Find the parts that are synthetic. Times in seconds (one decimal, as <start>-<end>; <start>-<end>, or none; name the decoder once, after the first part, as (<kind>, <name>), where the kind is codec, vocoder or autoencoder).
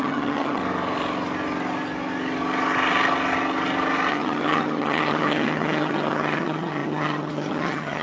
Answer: 0.0-0.6 (vocoder, HiFi-GAN); 4.1-8.0